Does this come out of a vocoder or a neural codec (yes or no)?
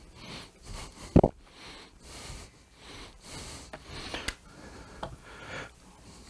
no